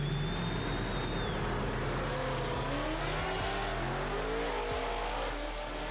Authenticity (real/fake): real